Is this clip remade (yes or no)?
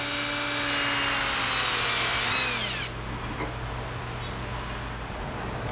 no